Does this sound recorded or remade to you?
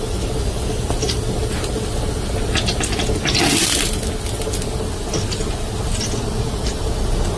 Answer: recorded